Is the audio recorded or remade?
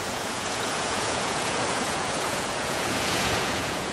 remade